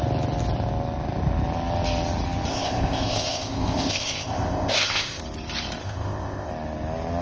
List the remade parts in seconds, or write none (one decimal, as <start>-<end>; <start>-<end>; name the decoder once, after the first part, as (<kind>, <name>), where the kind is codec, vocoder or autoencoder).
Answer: 2.5-5.2 (codec, ZipCodec); 5.8-6.5